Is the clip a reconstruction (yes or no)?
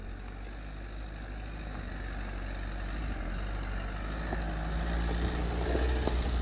no